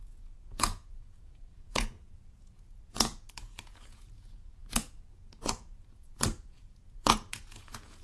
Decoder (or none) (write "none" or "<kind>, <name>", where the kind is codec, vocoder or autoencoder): vocoder, Vocos